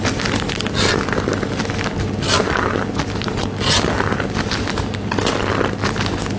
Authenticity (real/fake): real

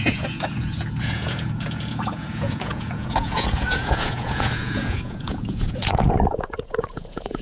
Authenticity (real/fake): fake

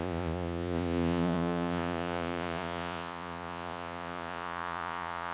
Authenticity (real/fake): fake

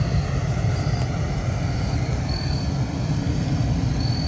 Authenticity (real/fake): real